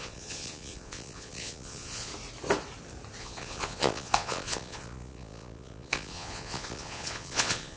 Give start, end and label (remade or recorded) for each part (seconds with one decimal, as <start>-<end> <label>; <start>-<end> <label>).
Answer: 0.0-2.1 remade; 2.1-3.2 recorded; 3.2-7.8 remade